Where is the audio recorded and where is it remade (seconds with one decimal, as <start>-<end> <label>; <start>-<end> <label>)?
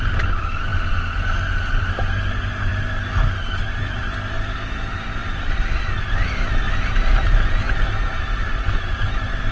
0.0-9.5 recorded